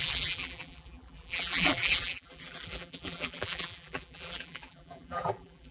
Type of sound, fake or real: fake